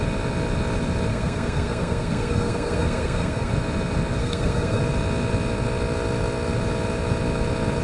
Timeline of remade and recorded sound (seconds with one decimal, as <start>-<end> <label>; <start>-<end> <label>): 0.0-1.1 recorded; 1.1-3.5 remade; 3.5-4.2 recorded; 4.2-4.8 remade; 4.8-7.8 recorded